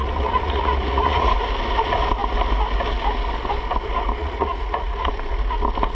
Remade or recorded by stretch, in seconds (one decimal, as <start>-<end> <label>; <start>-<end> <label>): 0.0-1.3 remade; 1.3-4.2 recorded; 4.2-5.1 remade; 5.1-5.9 recorded